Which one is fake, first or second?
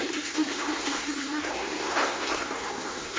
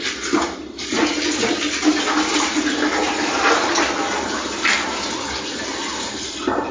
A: first